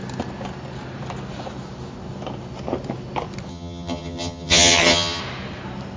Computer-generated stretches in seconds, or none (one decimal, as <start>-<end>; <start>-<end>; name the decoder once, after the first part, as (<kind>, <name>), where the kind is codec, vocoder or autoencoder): 3.5-5.2 (vocoder, HiFi-GAN)